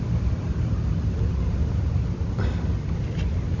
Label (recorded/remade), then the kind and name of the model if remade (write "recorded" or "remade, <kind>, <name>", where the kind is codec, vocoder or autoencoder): recorded